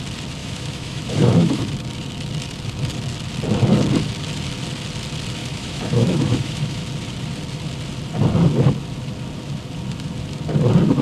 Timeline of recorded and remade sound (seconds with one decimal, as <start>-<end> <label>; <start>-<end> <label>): 0.0-0.4 recorded; 0.4-1.7 remade; 1.7-5.4 recorded; 5.4-6.8 remade; 6.8-11.0 recorded